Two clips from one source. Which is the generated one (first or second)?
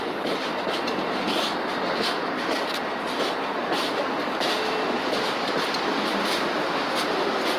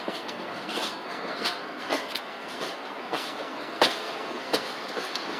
second